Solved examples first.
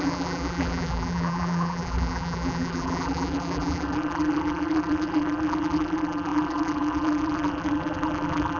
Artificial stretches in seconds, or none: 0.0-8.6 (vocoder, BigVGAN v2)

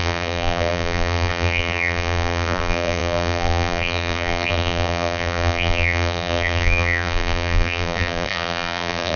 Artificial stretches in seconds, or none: 0.0-9.2 (vocoder, BigVGAN v2)

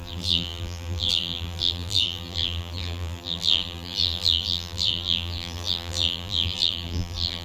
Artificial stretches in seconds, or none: 0.0-7.4 (vocoder, BigVGAN v2)

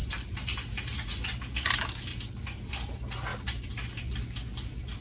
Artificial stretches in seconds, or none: 0.0-1.1 (vocoder, BigVGAN v2)

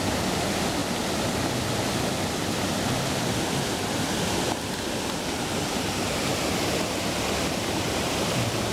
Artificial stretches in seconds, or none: none